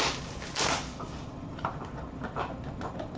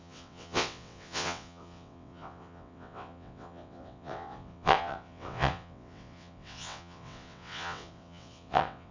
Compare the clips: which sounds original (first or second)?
first